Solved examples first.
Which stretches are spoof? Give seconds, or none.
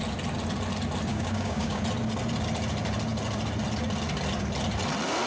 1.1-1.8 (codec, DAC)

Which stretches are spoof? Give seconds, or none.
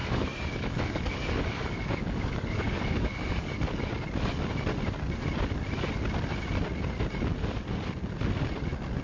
0.0-3.9 (codec, DAC)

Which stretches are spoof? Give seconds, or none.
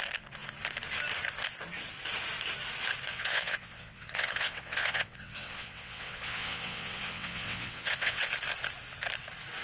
3.1-8.3 (vocoder, WaveNeXt)